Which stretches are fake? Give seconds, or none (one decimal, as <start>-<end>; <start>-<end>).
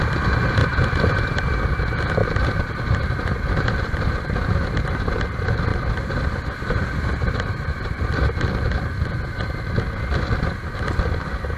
0.6-1.4; 2.2-5.1; 5.7-6.4; 7.1-8.9